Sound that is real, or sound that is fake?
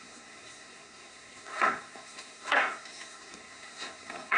fake